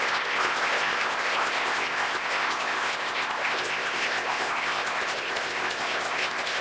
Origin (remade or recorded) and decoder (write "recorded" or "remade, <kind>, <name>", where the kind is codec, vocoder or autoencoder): remade, codec, ZipCodec